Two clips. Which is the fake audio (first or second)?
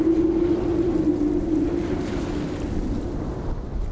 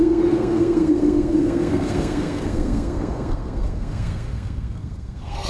second